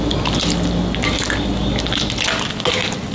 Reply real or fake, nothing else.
real